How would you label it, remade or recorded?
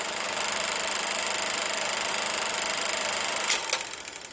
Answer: recorded